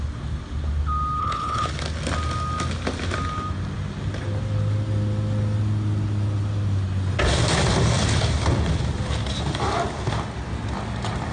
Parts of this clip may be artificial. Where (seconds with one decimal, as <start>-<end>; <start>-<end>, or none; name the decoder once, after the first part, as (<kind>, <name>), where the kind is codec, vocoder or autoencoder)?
1.2-1.8 (codec, HILCodec)